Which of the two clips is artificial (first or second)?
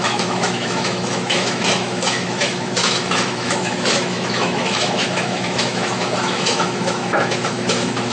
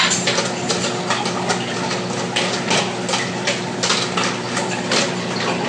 first